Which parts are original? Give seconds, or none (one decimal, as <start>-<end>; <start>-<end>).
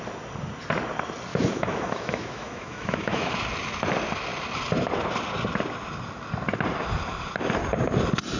0.0-1.3; 3.3-8.4